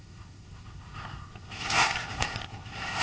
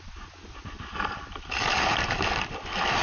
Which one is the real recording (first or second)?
second